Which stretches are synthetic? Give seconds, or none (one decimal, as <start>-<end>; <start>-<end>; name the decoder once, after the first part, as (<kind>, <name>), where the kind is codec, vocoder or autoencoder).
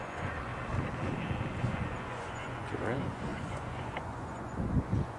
0.0-0.5 (vocoder, Vocos); 1.5-5.2